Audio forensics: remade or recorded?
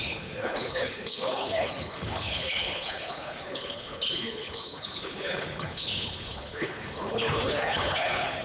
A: remade